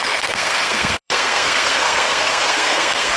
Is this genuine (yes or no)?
no